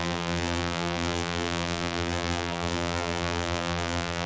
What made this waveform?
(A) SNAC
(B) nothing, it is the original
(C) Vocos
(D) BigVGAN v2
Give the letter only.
D